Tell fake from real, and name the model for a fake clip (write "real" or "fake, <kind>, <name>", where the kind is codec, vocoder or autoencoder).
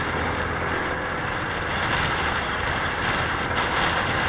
real